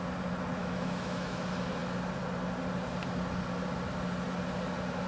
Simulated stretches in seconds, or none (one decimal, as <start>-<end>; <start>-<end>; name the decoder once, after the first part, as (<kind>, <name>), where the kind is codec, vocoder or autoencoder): 0.6-1.4 (autoencoder, DAC-VAE)

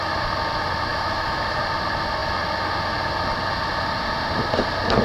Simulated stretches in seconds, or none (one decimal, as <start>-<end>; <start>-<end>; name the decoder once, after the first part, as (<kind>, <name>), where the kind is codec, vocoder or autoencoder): 0.9-1.6 (autoencoder, DAC-VAE)

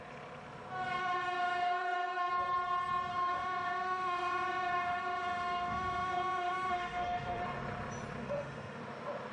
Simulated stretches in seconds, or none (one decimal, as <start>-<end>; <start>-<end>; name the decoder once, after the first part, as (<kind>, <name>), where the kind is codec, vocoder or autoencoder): 1.0-2.3 (autoencoder, DAC-VAE); 3.1-7.4; 8.2-8.8

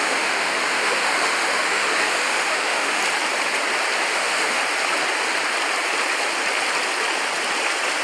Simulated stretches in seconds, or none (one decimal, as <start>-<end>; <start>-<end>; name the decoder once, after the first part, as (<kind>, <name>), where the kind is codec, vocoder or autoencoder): 0.0-3.0 (autoencoder, DAC-VAE); 4.0-4.6